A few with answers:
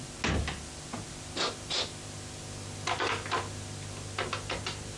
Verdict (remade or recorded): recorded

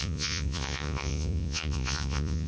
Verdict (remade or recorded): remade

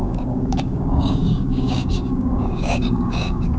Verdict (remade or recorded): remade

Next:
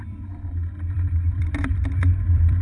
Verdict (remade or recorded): remade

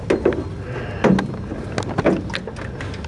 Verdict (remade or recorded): recorded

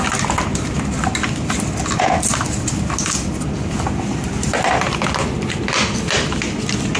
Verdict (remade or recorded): recorded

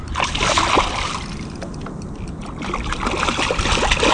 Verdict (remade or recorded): recorded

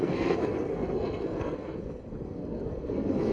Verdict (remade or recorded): remade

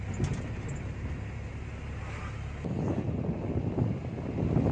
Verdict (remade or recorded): recorded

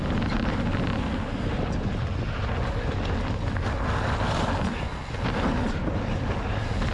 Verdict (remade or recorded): recorded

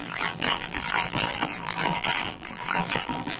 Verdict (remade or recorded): remade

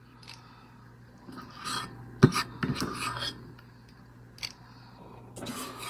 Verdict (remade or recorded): recorded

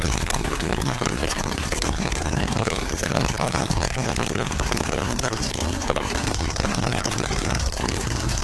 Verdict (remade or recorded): remade